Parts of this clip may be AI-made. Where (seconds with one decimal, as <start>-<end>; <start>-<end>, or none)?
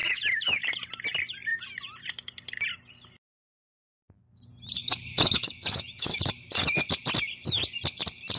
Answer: 0.0-0.7; 4.8-6.5